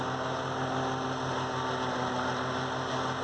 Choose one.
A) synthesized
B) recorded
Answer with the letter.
B